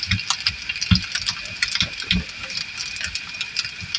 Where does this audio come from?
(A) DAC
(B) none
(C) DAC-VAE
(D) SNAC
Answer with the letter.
B